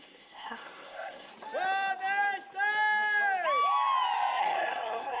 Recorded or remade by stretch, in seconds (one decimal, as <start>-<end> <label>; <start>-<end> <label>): 0.0-1.3 remade; 1.3-4.4 recorded; 4.4-5.2 remade